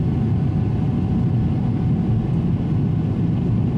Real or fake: real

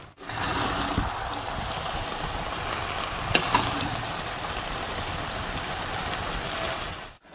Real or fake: real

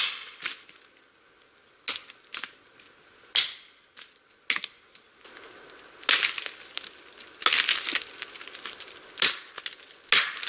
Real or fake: real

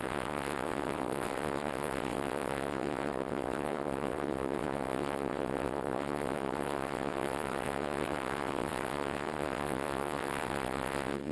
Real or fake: fake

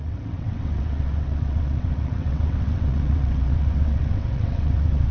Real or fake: fake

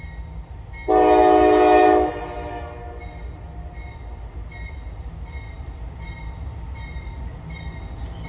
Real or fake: real